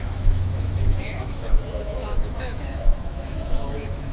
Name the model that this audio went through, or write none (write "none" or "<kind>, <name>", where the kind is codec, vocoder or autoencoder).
autoencoder, DAC-VAE